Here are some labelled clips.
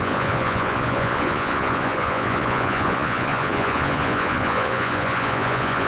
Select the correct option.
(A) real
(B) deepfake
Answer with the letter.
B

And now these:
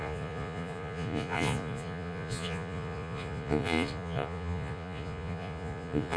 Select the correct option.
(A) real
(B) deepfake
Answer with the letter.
B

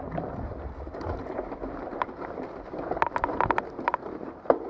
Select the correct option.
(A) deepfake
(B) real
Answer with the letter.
B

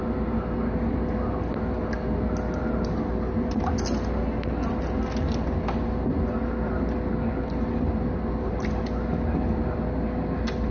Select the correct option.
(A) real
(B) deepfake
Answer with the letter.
A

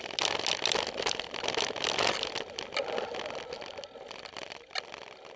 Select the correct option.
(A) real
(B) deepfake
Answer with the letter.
A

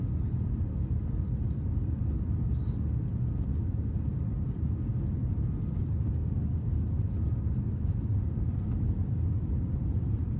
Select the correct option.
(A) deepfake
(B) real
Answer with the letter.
B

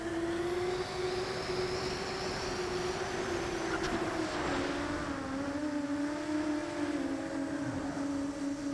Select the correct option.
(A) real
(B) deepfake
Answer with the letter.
A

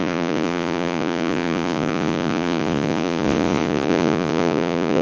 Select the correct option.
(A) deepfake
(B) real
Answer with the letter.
A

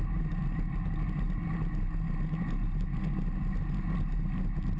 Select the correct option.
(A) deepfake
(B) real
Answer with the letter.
B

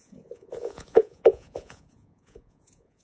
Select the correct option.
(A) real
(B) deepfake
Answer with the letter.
B